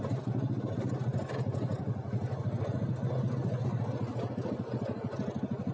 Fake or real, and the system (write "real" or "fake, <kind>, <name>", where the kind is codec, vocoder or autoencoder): real